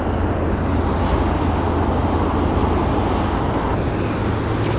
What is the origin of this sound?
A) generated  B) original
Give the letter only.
B